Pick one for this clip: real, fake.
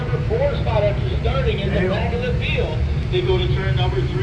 real